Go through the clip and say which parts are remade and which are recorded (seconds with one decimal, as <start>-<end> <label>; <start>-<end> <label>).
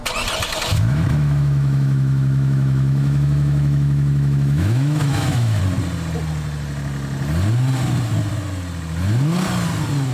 0.0-0.7 recorded; 0.7-5.6 remade; 5.6-10.1 recorded